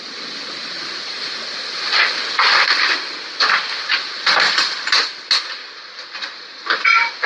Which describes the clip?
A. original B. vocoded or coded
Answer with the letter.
A